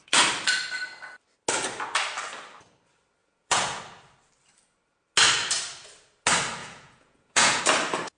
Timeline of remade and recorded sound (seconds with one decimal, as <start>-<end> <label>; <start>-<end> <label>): 0.0-3.2 recorded; 3.2-3.8 remade; 3.8-6.6 recorded; 6.6-7.6 remade; 7.6-8.2 recorded